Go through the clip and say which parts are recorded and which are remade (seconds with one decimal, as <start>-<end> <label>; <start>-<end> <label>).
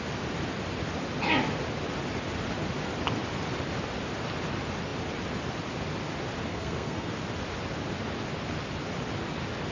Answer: 0.0-6.5 recorded; 6.5-7.1 remade; 7.1-9.7 recorded